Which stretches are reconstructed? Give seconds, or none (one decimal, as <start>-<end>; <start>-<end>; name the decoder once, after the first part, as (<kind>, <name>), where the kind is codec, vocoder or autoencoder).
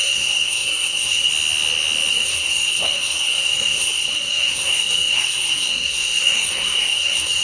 0.0-1.3 (codec, SNAC); 2.1-7.4